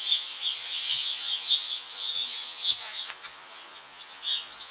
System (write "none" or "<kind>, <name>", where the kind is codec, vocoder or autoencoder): vocoder, Vocos